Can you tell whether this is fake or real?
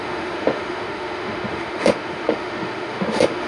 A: fake